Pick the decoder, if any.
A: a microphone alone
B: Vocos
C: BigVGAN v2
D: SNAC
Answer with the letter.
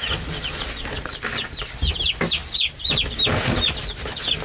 A